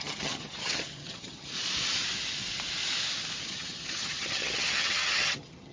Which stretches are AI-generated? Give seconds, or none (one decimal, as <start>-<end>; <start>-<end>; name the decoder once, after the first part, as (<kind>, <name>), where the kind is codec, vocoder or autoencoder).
0.0-1.5 (vocoder, HiFi-GAN); 3.4-5.7